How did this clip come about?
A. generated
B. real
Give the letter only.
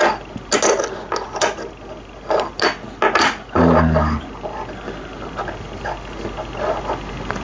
B